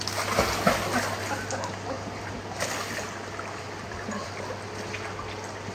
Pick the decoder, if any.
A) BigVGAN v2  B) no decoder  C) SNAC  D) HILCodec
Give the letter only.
B